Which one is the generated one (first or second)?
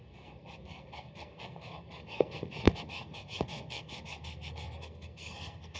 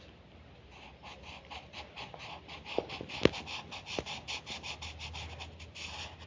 first